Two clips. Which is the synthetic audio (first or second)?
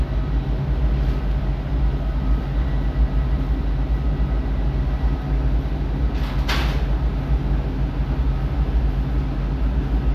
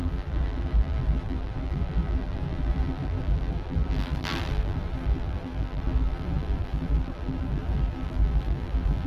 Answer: second